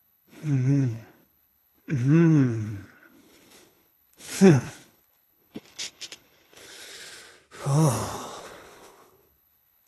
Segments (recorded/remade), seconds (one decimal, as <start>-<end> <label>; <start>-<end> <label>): 0.0-6.9 remade; 6.9-8.4 recorded; 8.4-9.9 remade